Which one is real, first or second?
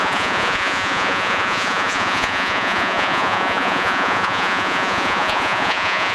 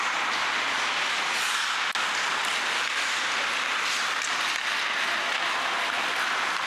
second